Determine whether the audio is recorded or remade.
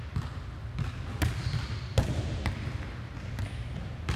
recorded